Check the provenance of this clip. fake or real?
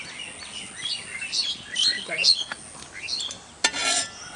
real